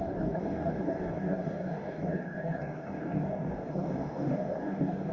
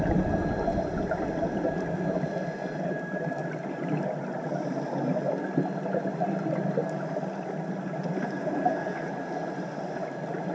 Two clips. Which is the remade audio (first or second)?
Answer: first